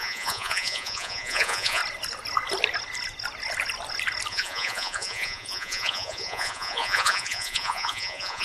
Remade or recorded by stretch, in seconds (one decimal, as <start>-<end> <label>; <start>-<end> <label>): 0.0-1.8 remade; 1.8-4.3 recorded; 4.3-8.4 remade